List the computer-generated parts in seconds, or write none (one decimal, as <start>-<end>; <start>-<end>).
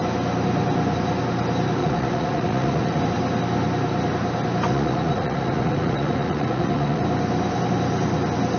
1.8-3.0; 4.7-7.0